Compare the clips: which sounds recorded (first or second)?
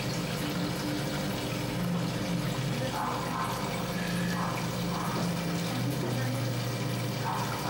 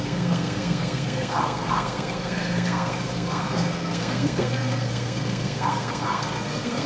first